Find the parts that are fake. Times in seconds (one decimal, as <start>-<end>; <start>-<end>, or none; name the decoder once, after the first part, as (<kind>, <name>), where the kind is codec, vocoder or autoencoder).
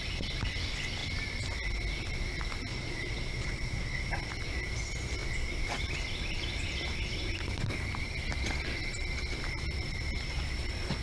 2.7-4.3 (vocoder, Vocos)